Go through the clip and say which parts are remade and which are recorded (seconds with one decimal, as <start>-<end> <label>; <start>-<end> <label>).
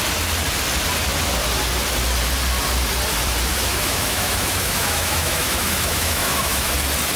0.0-3.5 recorded; 3.5-6.7 remade; 6.7-7.2 recorded